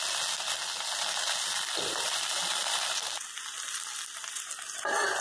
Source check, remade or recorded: recorded